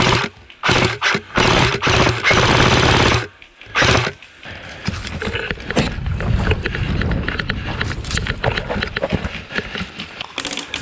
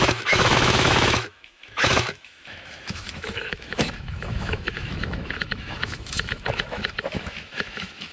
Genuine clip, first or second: first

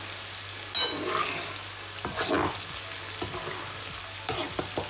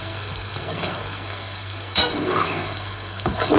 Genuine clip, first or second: first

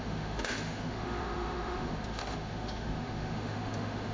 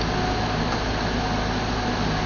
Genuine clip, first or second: second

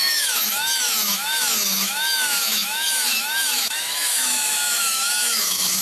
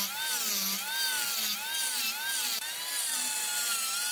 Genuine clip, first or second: second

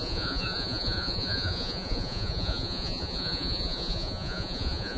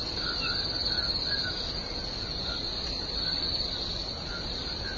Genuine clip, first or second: second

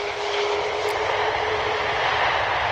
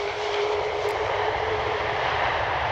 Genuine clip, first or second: first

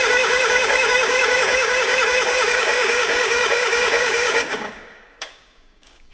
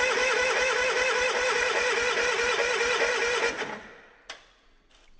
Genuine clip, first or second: second